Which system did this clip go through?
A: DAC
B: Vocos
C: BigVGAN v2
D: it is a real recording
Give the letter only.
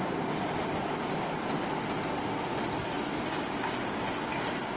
D